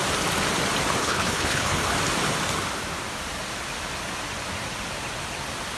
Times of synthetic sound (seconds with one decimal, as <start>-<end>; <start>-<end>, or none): 1.0-1.8

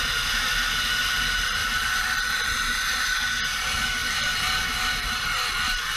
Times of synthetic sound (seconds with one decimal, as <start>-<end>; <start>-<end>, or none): 1.6-3.0; 4.0-5.0

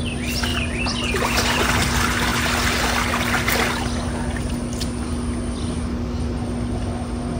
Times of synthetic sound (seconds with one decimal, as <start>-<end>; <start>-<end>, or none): 0.5-1.6

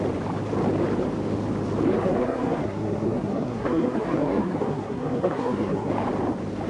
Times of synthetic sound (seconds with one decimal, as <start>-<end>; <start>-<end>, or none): 1.9-5.9

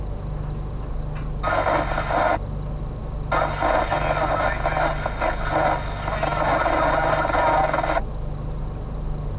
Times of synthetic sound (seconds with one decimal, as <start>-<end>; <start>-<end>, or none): none

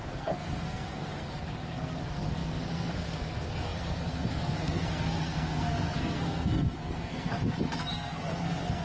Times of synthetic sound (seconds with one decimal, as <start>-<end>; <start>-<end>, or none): 0.0-8.8

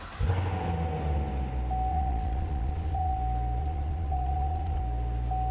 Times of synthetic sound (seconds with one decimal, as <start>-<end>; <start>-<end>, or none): 1.9-3.2; 3.6-4.8

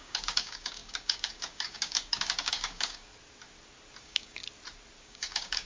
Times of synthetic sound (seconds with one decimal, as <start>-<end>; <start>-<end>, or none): 0.0-3.1; 4.0-4.4; 5.0-5.7